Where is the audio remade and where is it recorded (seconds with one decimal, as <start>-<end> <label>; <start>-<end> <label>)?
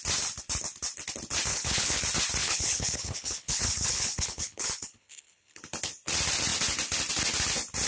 0.0-1.5 recorded; 1.5-2.0 remade; 2.0-2.4 recorded; 2.4-5.6 remade; 5.6-7.9 recorded